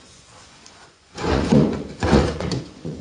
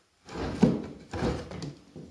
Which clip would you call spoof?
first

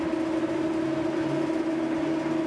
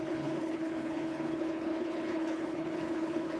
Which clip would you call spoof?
second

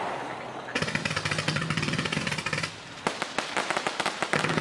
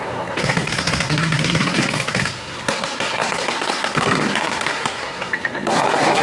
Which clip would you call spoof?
second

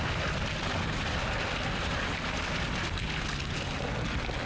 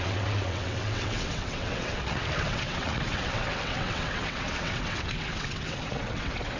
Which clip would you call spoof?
second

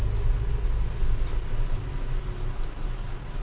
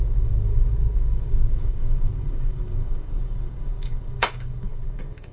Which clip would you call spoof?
second